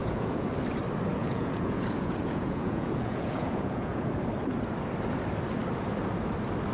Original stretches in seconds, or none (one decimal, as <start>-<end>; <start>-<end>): 0.5-1.1; 4.1-6.7